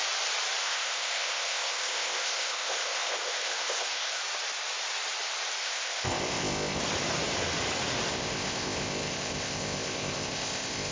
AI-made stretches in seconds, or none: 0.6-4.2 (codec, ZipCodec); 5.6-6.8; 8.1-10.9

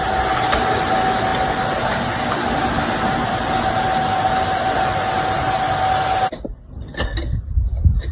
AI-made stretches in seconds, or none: none

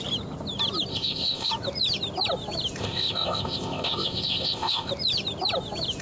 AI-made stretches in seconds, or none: 0.9-1.5 (codec, ZipCodec); 2.8-4.9

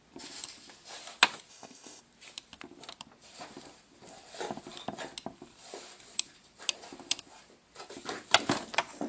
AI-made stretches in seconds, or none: 1.5-2.0 (codec, ZipCodec)

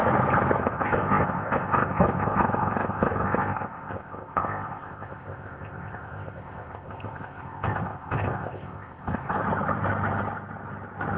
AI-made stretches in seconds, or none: 0.6-9.4 (codec, ZipCodec)

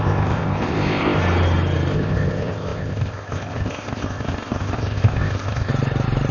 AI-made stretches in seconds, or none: 0.0-1.2 (codec, ZipCodec); 1.9-5.7